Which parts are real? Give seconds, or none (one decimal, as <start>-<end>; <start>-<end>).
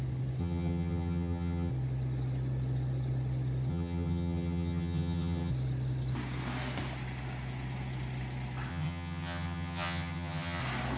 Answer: 0.0-0.4; 1.7-3.7; 5.5-8.7; 10.6-11.0